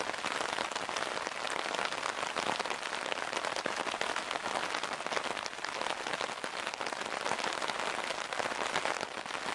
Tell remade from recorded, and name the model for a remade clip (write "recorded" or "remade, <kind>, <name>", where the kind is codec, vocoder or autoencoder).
recorded